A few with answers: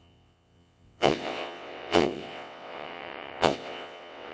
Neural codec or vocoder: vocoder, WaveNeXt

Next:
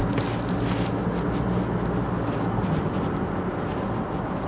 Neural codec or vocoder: none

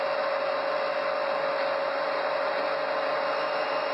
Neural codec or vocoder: none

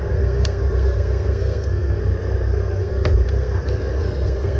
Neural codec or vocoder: codec, SNAC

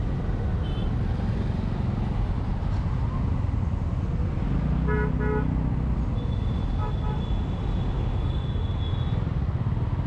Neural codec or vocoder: none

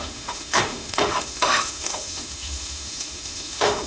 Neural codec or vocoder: autoencoder, DAC-VAE